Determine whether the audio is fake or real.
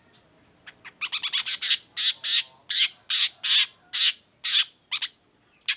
real